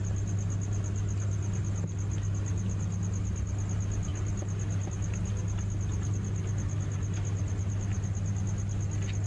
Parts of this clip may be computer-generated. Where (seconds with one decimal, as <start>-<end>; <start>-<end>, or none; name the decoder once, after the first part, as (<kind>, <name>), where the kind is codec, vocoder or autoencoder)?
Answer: none